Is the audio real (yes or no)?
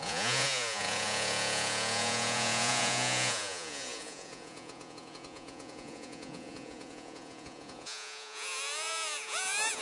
no